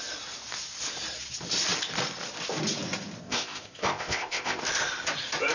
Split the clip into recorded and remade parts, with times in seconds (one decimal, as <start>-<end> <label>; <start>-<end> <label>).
0.0-3.2 recorded; 3.2-4.6 remade; 4.6-5.5 recorded